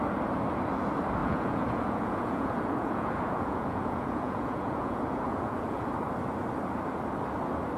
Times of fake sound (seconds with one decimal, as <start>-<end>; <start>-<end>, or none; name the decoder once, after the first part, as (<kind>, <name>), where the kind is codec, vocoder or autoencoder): 1.2-5.9 (vocoder, Vocos)